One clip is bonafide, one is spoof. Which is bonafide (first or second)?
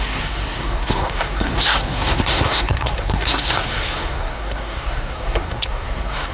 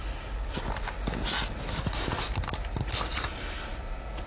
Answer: second